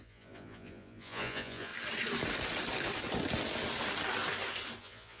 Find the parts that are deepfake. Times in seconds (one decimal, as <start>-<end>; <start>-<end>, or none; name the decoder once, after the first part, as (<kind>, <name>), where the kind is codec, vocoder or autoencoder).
0.0-1.7 (vocoder, Vocos); 4.8-5.2